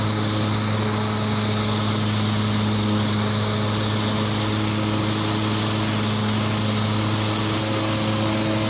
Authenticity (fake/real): real